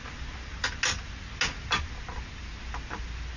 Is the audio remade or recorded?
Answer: recorded